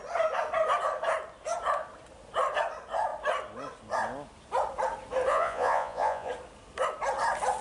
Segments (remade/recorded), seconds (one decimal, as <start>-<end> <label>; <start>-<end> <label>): 0.0-5.3 recorded; 5.3-6.3 remade; 6.3-7.6 recorded